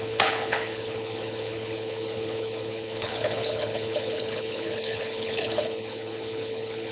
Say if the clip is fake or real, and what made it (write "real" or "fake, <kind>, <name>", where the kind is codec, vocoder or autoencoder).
fake, codec, HILCodec